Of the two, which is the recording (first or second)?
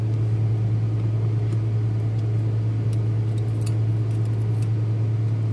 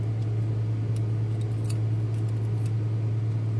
first